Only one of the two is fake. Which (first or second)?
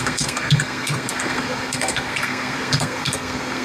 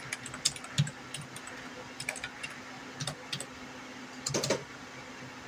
first